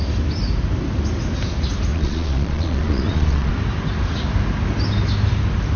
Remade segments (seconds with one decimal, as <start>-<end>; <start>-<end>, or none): 1.9-3.5